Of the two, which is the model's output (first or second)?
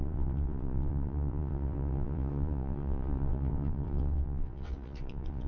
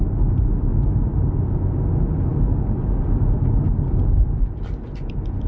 first